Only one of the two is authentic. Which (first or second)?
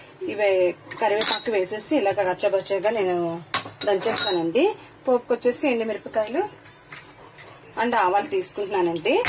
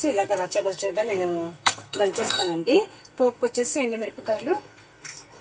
first